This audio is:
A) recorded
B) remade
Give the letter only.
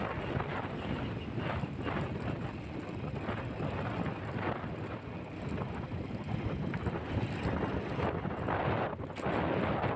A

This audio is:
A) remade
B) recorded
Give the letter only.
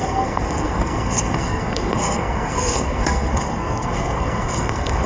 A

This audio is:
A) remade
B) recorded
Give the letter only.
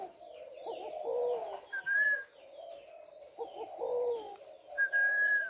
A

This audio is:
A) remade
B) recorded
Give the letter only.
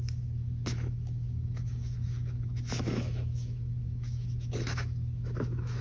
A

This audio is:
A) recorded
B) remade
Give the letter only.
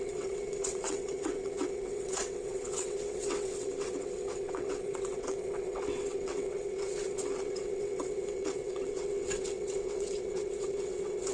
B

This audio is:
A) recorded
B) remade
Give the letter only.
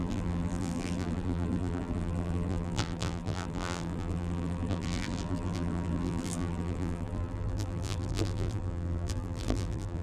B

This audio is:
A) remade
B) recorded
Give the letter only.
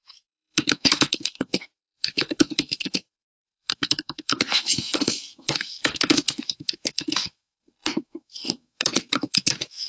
A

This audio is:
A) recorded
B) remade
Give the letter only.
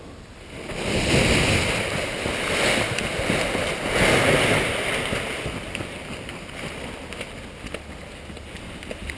A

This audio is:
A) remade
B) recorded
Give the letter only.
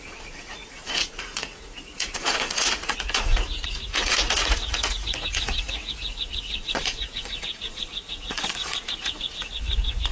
A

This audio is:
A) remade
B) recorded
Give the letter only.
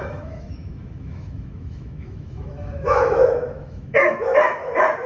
A